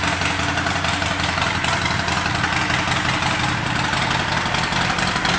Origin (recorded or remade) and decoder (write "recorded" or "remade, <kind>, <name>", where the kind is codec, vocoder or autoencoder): recorded